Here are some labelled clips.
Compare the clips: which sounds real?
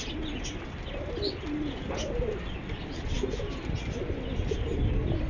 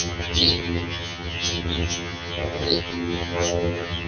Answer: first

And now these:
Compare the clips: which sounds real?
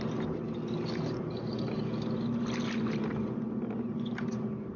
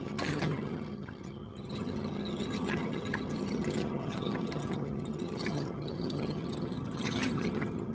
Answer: first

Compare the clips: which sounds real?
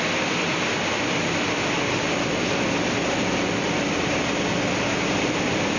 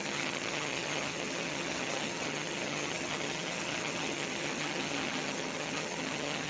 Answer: first